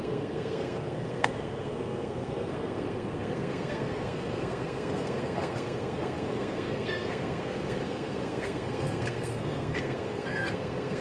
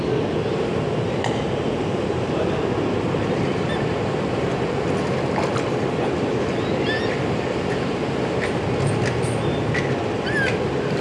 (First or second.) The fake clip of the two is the first